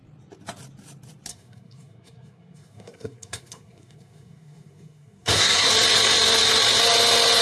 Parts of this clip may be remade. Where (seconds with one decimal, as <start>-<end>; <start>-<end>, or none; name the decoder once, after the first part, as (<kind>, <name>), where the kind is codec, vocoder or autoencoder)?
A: 1.3-5.7 (codec, SNAC)